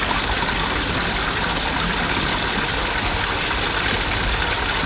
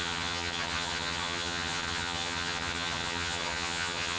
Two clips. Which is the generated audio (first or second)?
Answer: second